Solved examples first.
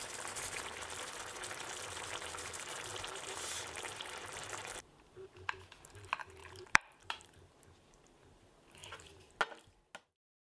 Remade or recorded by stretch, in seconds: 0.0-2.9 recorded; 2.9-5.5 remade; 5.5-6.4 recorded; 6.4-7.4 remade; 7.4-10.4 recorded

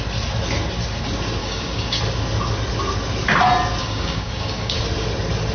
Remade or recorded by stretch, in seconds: 0.0-1.4 recorded; 1.4-2.0 remade; 2.0-3.8 recorded; 3.8-4.8 remade; 4.8-5.5 recorded